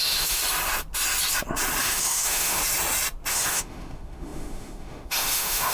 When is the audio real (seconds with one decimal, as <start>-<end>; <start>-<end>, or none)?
0.4-1.8; 2.6-3.3